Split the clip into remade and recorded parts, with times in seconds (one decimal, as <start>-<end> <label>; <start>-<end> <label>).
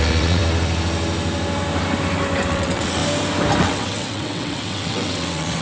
0.0-0.4 remade; 0.4-2.5 recorded; 2.5-3.0 remade; 3.0-3.6 recorded; 3.6-5.6 remade